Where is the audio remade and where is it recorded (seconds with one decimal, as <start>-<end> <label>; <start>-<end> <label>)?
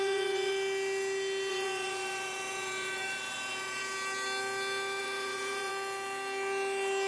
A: 0.0-0.5 remade; 0.5-1.5 recorded; 1.5-3.8 remade; 3.8-5.0 recorded; 5.0-5.7 remade; 5.7-7.1 recorded